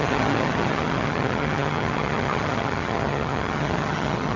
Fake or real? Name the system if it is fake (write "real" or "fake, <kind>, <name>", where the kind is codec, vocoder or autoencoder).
fake, vocoder, HiFi-GAN